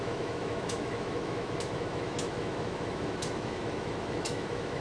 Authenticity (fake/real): fake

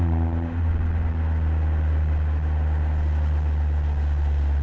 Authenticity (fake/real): real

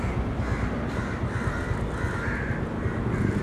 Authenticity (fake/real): real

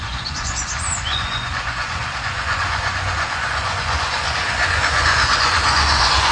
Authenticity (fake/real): fake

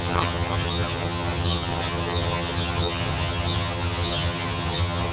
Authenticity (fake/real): fake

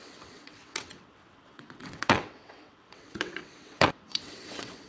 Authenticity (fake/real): fake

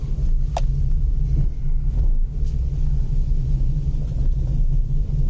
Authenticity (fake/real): real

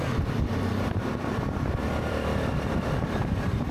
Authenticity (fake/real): fake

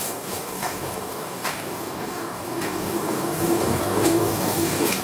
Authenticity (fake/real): fake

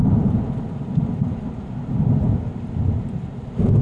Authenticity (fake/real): real